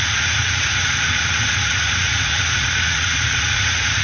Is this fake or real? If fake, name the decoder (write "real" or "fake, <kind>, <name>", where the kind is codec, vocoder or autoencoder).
fake, vocoder, Vocos